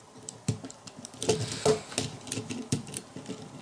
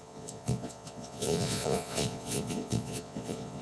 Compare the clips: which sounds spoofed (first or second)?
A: second